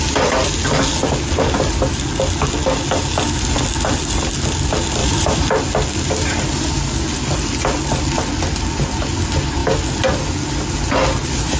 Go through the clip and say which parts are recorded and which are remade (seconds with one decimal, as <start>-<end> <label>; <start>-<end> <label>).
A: 0.0-5.0 recorded; 5.0-5.5 remade; 5.5-11.6 recorded